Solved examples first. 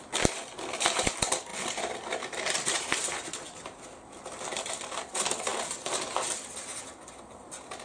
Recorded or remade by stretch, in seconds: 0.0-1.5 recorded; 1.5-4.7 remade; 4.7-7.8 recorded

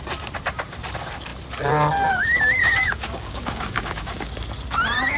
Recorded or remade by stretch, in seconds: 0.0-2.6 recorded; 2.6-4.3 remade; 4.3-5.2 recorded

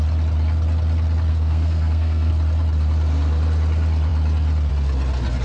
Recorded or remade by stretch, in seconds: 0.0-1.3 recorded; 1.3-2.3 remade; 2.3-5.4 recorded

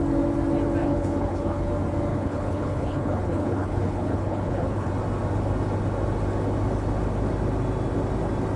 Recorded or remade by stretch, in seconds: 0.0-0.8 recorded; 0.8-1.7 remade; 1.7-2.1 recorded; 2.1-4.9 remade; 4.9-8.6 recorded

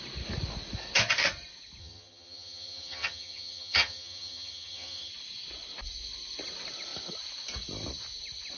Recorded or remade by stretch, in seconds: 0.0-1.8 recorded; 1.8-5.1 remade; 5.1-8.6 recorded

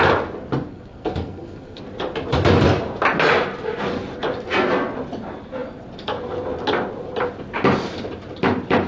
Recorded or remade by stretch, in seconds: 0.0-0.7 recorded; 0.7-1.8 remade; 1.8-8.9 recorded

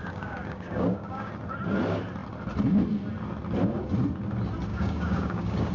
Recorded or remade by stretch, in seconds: 0.0-1.3 remade; 1.3-4.7 recorded; 4.7-5.7 remade